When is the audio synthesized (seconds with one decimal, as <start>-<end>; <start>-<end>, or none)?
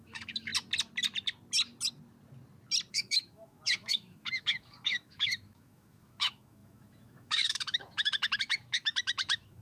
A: 0.0-0.5; 2.9-9.6